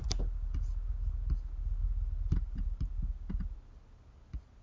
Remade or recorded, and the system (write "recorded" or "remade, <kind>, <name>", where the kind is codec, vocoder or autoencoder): recorded